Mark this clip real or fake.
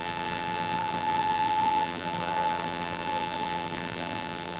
fake